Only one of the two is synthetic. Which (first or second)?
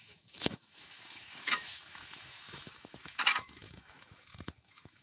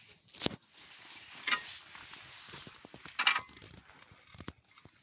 first